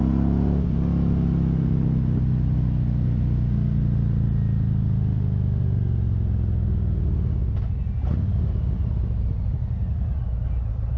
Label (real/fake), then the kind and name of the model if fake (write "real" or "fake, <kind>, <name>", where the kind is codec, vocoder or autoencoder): real